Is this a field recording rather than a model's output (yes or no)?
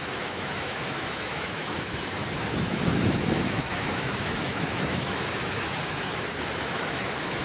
no